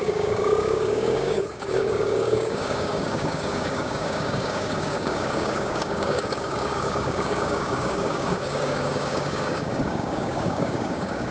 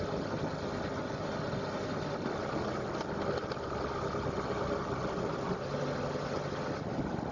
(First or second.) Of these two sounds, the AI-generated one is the first